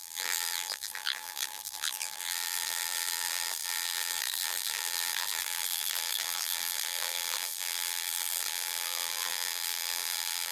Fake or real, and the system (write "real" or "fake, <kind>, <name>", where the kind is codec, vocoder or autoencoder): fake, vocoder, BigVGAN v2